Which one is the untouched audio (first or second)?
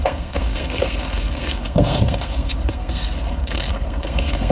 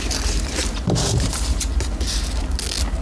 second